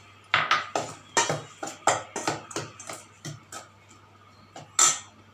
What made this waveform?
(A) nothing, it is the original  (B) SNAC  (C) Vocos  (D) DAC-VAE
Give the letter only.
A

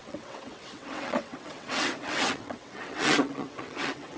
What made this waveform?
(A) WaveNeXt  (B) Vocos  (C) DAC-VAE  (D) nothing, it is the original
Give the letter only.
A